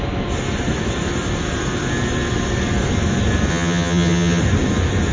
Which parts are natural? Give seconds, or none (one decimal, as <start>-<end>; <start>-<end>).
0.0-3.5; 4.4-5.1